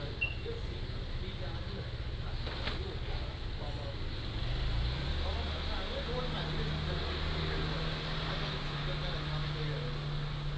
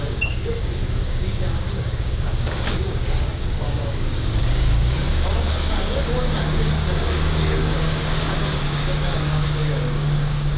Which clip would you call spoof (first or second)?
second